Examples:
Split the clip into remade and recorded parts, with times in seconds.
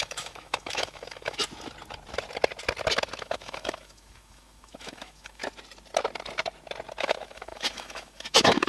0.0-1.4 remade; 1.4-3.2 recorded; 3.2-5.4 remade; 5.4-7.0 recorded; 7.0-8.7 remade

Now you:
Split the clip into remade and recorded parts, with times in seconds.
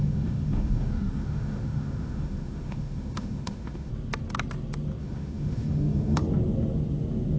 0.0-3.9 remade; 3.9-5.0 recorded; 5.0-6.2 remade; 6.2-7.4 recorded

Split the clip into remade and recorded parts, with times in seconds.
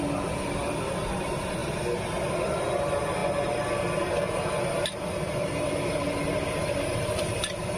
0.0-7.8 recorded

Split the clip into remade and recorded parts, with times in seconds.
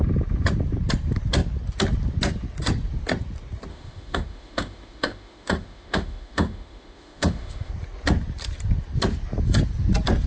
0.0-3.7 recorded; 3.7-7.7 remade; 7.7-10.3 recorded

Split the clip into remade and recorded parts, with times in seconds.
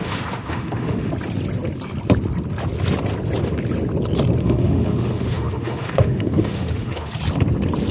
0.0-1.1 remade; 1.1-4.4 recorded; 4.4-7.1 remade; 7.1-7.9 recorded